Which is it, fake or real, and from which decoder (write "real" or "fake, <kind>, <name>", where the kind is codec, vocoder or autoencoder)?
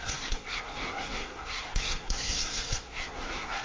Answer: fake, codec, SNAC